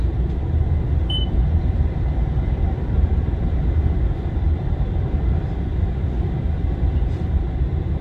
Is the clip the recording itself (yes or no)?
no